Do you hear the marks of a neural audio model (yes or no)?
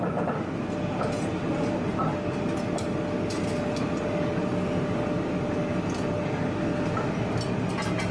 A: no